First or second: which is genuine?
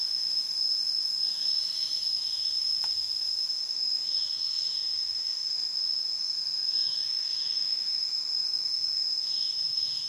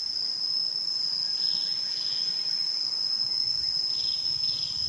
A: second